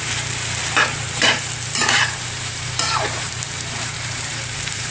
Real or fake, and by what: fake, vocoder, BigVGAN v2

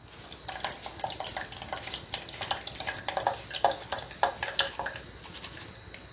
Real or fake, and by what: real